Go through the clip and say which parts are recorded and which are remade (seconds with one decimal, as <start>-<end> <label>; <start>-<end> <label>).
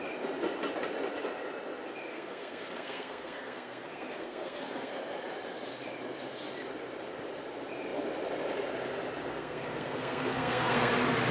0.0-2.1 recorded; 2.1-4.9 remade; 4.9-9.3 recorded; 9.3-10.9 remade; 10.9-11.3 recorded